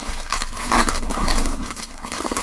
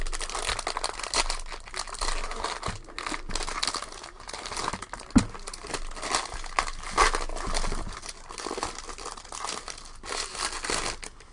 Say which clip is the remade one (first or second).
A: first